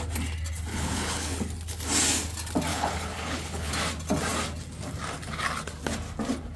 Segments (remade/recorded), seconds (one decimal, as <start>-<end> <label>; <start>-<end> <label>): 0.0-0.7 recorded; 0.7-1.4 remade; 1.4-2.7 recorded; 2.7-3.7 remade; 3.7-6.6 recorded